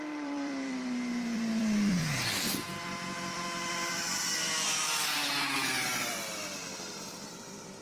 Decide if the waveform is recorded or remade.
remade